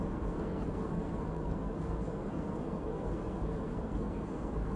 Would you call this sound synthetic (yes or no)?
yes